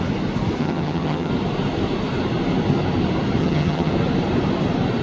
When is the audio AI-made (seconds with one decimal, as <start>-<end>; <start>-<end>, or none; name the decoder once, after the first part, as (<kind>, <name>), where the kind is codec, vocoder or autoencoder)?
0.6-1.3 (vocoder, HiFi-GAN); 3.4-3.9